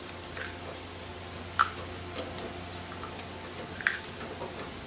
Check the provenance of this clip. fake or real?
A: real